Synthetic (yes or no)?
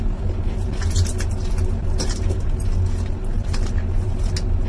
no